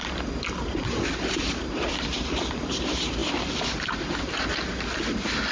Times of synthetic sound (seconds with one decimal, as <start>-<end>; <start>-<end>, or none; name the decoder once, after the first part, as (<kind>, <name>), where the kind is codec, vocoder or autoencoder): none